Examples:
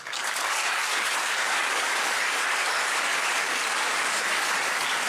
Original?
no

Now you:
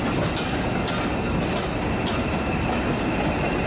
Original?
yes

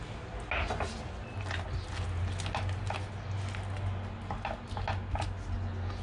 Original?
yes